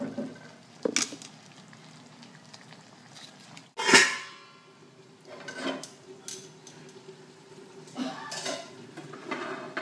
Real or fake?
real